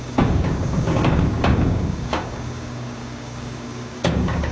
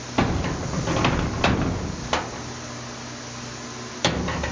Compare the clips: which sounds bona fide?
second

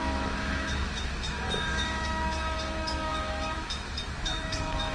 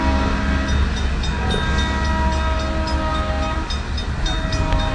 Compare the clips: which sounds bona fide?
second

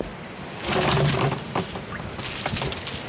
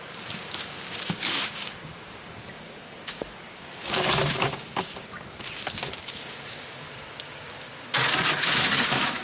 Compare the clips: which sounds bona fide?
first